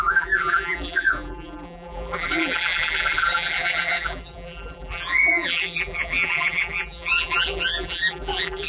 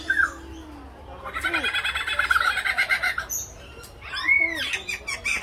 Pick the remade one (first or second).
first